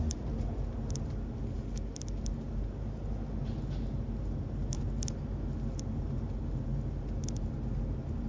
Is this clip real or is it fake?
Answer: real